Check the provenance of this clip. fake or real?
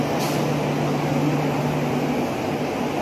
real